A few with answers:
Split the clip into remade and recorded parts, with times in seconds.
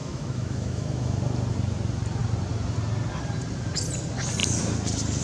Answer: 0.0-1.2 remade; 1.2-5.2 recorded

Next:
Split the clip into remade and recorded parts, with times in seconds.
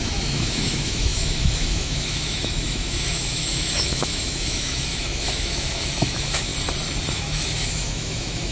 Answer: 0.0-6.5 remade; 6.5-7.1 recorded; 7.1-8.5 remade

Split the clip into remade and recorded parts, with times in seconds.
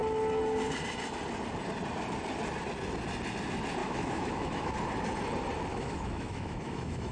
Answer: 0.0-3.8 recorded; 3.8-4.7 remade; 4.7-5.7 recorded; 5.7-7.1 remade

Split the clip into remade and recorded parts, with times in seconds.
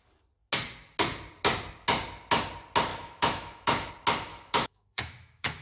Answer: 0.0-2.9 recorded; 2.9-3.9 remade; 3.9-4.3 recorded; 4.3-5.6 remade